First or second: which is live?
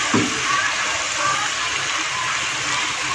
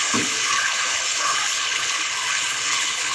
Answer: first